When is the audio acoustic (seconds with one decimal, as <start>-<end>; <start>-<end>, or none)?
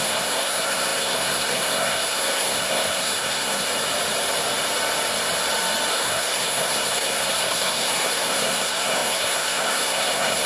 3.7-5.9